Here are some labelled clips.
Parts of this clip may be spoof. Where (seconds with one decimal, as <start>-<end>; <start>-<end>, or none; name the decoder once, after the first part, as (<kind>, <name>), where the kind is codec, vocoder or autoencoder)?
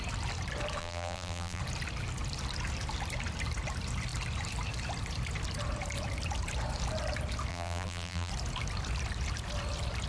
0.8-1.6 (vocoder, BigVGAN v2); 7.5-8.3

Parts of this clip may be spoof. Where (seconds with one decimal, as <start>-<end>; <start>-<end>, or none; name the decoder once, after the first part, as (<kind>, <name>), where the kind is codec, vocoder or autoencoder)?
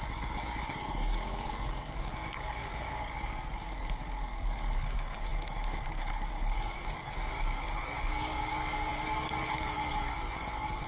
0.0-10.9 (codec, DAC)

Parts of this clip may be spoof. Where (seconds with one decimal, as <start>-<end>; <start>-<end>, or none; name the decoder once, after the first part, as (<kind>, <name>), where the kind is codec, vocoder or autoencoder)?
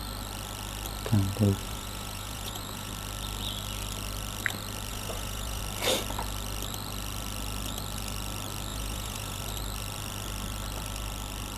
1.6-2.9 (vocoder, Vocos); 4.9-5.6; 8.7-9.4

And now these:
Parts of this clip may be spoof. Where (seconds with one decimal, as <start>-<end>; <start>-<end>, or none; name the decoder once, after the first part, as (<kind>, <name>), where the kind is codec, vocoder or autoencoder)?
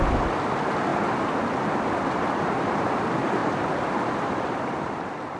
0.9-2.9 (vocoder, BigVGAN v2); 3.4-4.9